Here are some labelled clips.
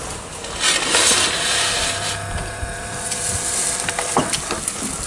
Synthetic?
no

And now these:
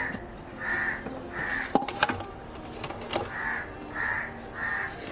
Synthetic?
no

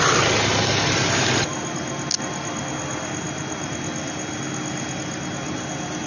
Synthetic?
no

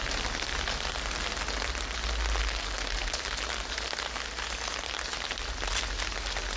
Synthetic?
no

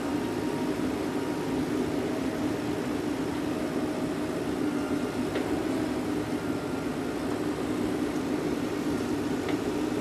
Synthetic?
no